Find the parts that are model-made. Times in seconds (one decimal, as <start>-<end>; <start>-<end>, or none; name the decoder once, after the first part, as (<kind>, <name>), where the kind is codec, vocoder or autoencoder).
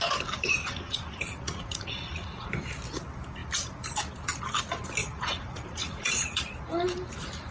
0.6-2.5 (vocoder, Vocos); 5.0-6.5